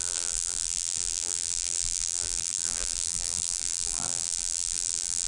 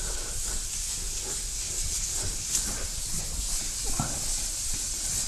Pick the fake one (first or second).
first